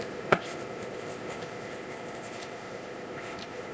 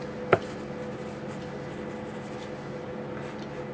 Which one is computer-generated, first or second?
first